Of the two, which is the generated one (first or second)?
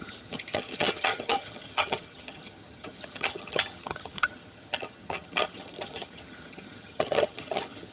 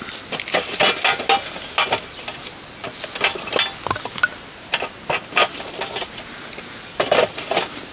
first